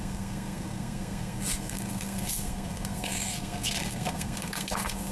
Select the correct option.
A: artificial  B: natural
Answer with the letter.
A